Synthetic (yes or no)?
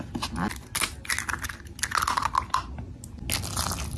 no